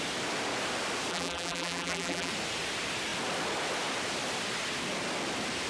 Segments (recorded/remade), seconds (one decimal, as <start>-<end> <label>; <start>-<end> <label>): 0.0-1.1 recorded; 1.1-2.3 remade; 2.3-5.7 recorded